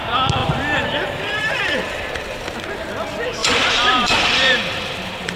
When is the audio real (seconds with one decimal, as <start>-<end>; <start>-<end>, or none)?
0.0-0.4; 2.9-3.4